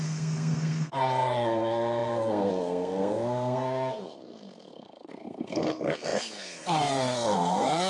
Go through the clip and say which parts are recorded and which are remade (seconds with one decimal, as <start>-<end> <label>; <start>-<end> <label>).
0.0-7.9 remade